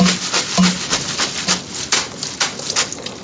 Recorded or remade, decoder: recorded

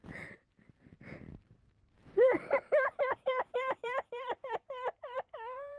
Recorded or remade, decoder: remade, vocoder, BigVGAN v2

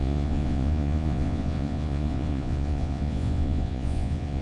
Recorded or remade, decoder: remade, vocoder, Vocos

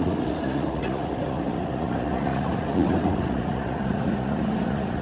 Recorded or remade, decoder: remade, vocoder, Vocos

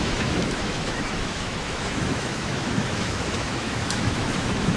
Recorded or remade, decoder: remade, autoencoder, DAC-VAE